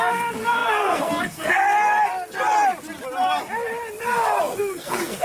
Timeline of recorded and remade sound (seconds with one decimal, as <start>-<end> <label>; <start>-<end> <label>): 0.0-1.6 remade; 1.6-4.4 recorded; 4.4-5.2 remade